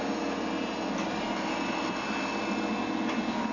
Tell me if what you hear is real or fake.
real